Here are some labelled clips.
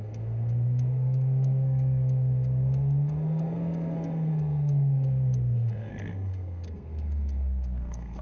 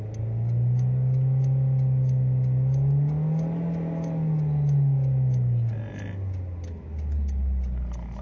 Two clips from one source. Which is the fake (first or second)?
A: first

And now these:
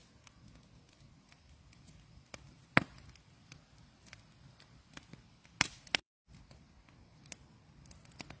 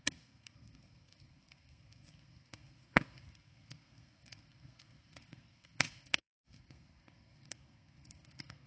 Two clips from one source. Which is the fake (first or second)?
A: second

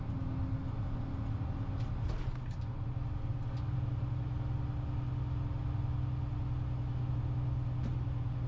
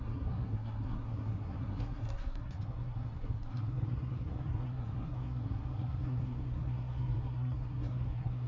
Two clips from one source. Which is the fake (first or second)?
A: second